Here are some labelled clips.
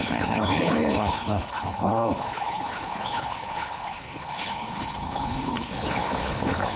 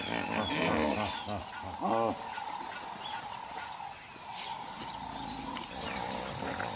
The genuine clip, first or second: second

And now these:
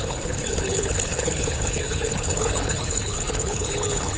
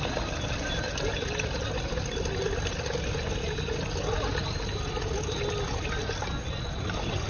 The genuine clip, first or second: second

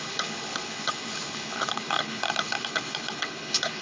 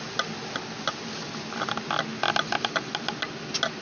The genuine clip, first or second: second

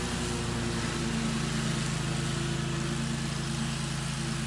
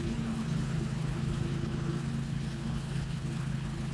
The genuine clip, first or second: first